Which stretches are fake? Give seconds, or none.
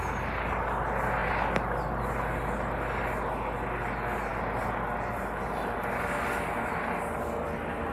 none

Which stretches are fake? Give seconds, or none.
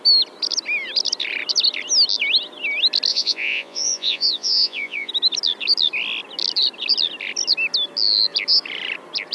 3.1-5.1 (vocoder, Vocos)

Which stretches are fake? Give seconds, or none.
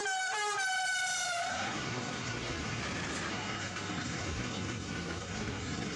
1.5-2.8 (codec, SNAC); 3.3-6.0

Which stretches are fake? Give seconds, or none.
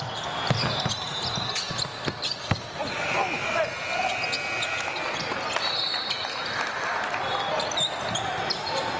none